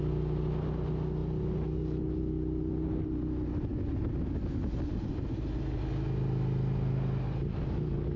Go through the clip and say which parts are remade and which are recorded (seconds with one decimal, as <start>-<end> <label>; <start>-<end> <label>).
0.0-8.2 recorded